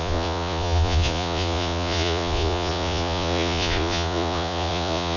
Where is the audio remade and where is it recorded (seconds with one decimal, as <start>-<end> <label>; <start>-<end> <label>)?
0.0-5.2 remade